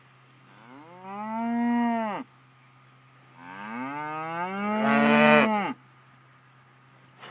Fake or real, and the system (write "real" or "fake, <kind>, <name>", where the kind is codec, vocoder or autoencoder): real